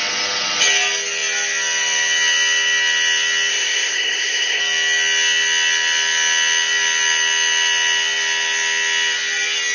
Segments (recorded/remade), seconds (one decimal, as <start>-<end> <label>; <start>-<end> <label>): 0.0-3.5 recorded; 3.5-4.6 remade; 4.6-9.7 recorded